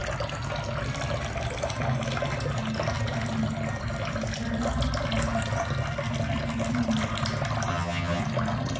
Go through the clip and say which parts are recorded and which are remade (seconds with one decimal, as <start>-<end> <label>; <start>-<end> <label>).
0.0-7.7 recorded; 7.7-8.2 remade; 8.2-8.8 recorded